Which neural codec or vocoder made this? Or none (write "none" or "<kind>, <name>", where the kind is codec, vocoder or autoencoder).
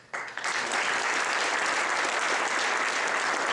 none